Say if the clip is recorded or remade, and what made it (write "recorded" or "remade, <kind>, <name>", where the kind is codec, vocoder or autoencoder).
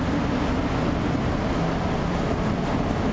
recorded